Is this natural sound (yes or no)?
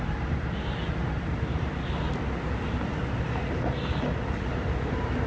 yes